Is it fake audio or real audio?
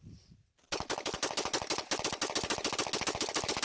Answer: real